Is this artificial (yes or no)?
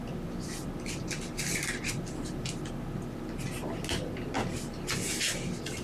no